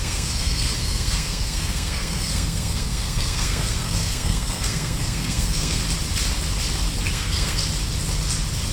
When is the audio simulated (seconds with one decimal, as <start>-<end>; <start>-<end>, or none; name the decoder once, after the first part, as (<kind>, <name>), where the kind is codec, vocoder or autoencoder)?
0.0-5.8 (codec, SNAC); 7.1-7.6